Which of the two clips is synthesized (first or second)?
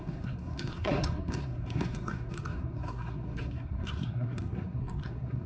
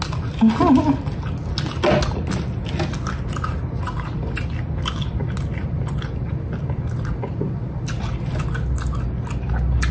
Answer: first